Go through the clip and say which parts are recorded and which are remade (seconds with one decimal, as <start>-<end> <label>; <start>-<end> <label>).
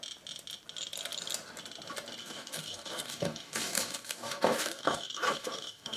0.0-2.2 recorded; 2.2-6.0 remade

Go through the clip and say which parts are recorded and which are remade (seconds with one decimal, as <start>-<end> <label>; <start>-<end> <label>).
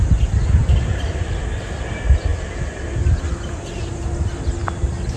0.0-0.6 recorded; 0.6-1.4 remade; 1.4-2.3 recorded; 2.3-3.2 remade; 3.2-5.2 recorded